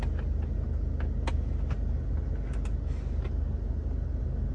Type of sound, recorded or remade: recorded